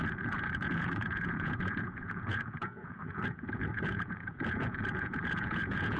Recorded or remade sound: remade